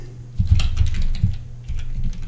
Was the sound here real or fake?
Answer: real